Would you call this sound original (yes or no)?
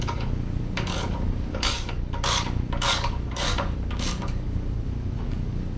no